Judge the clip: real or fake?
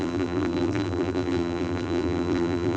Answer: fake